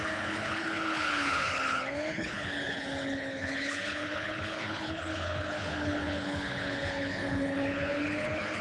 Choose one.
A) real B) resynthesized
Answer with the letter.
B